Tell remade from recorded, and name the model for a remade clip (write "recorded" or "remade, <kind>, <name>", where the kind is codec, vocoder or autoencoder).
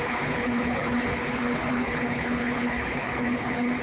remade, codec, HILCodec